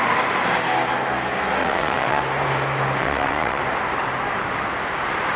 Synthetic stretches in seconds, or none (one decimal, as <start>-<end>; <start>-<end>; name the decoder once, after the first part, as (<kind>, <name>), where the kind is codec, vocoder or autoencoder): 1.6-2.2 (vocoder, WaveNeXt); 3.0-3.6

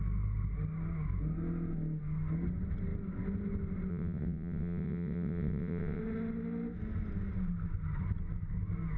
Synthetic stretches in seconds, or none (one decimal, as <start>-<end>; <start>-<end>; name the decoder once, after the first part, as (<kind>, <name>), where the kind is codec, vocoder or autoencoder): 3.9-6.0 (vocoder, WaveNeXt)

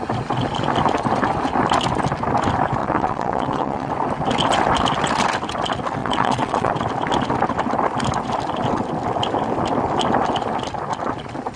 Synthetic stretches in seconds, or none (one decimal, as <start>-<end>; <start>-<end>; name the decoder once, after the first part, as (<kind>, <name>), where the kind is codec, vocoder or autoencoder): 2.8-3.9 (vocoder, WaveNeXt); 6.0-6.7

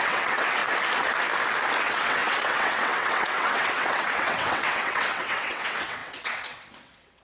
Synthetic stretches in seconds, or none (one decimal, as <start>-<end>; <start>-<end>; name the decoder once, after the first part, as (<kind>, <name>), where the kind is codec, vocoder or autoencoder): 0.0-0.6 (vocoder, WaveNeXt); 1.8-7.2

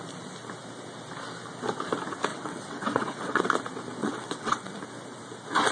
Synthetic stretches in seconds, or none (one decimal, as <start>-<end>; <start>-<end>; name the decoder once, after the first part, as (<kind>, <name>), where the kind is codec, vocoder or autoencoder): 2.3-3.4 (vocoder, WaveNeXt); 4.0-4.7

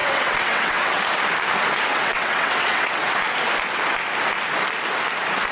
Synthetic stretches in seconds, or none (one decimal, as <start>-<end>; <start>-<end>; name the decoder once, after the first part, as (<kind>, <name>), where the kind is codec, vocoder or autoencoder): 0.0-1.0 (vocoder, WaveNeXt); 1.9-3.0

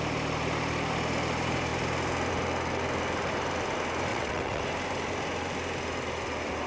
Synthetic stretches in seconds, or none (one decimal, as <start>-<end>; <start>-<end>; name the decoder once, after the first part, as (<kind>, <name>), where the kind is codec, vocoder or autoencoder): 4.1-4.6 (vocoder, WaveNeXt)